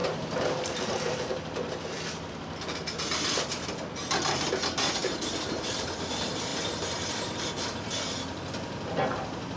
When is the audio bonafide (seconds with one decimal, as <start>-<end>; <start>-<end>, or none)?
2.0-5.0; 5.6-6.5; 7.5-9.6